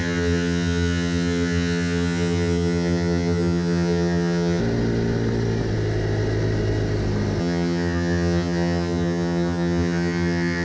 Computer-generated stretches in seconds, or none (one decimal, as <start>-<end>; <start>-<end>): 0.0-4.6; 7.4-10.6